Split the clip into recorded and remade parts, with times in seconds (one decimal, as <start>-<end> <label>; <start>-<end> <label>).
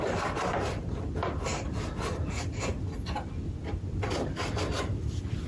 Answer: 0.0-5.5 recorded